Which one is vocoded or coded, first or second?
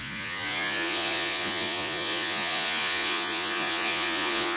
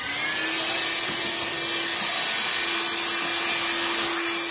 first